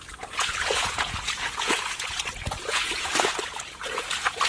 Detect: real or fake fake